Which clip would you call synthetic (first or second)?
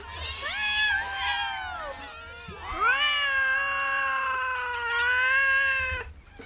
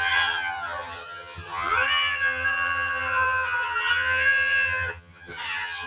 second